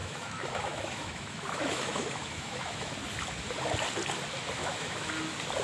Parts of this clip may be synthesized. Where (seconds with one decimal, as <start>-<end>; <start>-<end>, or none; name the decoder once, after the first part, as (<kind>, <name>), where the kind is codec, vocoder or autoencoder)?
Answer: 0.0-2.9 (autoencoder, DAC-VAE); 4.6-5.1